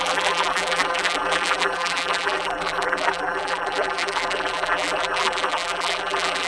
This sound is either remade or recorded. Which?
remade